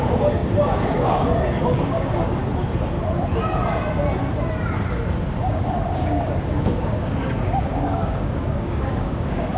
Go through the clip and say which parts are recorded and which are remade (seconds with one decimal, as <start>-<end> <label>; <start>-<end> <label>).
0.0-2.4 remade; 2.4-5.4 recorded; 5.4-9.6 remade